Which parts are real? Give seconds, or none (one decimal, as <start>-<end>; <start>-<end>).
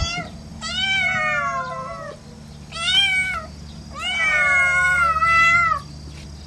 0.0-6.5